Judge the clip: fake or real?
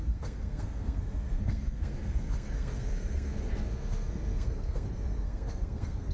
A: fake